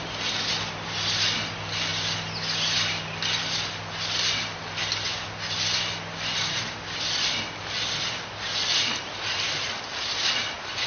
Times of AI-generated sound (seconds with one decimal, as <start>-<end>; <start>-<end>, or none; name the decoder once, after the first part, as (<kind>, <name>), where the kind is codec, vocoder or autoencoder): none